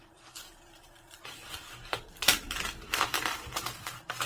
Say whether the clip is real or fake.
fake